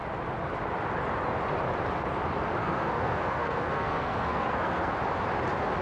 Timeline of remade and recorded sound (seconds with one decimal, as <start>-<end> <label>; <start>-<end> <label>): 0.0-2.6 recorded; 2.6-4.9 remade; 4.9-5.8 recorded